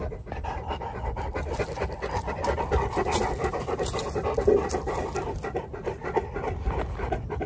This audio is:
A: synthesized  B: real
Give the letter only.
B